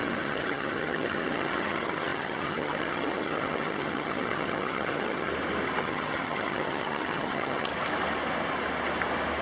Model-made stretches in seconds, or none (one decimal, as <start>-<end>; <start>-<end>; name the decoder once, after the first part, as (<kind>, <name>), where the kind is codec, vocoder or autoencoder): 0.0-5.3 (vocoder, HiFi-GAN); 5.8-7.7